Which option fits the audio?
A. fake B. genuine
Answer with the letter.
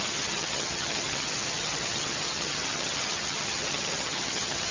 A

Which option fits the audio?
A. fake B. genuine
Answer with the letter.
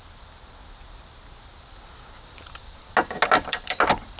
B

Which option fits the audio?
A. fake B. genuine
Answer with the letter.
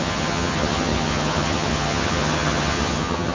A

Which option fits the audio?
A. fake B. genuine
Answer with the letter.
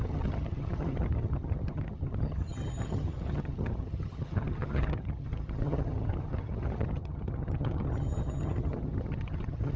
A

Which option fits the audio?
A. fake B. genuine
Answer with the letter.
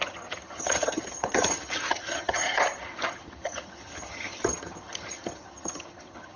A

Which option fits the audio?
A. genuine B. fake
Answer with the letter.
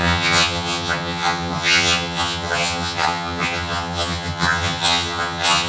B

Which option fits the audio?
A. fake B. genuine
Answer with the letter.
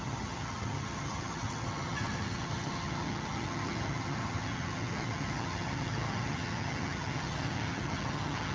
A